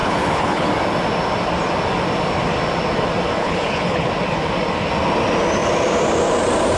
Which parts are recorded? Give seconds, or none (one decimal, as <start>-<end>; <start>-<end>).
0.7-3.4; 4.1-6.8